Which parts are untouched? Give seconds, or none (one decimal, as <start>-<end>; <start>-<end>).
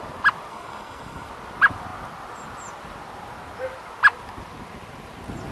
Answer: 0.0-0.5; 1.3-5.5